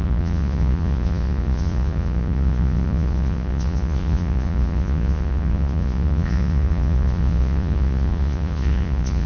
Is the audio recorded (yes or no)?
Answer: no